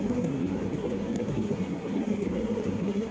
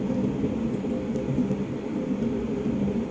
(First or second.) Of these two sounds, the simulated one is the first